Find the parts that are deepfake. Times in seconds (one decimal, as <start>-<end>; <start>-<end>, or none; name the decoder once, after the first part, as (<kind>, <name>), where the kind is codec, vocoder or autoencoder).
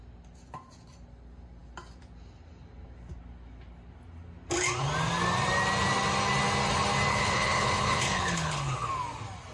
7.1-8.9 (codec, HILCodec)